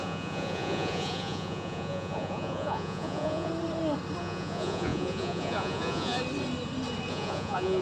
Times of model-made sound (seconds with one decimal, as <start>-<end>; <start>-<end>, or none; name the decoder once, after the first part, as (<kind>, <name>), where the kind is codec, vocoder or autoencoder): 0.0-3.5 (vocoder, Vocos); 4.2-6.2; 7.1-7.8